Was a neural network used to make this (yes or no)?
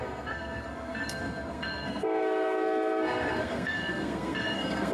yes